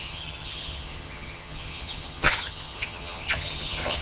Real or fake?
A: fake